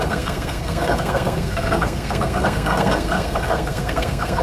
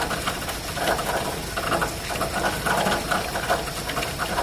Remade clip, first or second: first